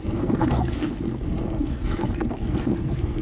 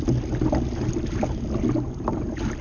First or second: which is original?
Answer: second